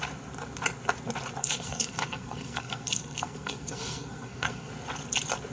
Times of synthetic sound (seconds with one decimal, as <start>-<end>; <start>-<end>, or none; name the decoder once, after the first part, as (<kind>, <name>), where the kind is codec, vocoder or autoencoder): 1.4-4.7 (codec, SNAC)